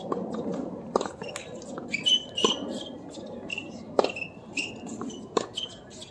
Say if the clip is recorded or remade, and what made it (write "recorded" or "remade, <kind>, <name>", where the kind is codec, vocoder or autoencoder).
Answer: recorded